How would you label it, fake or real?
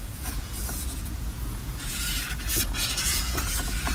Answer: fake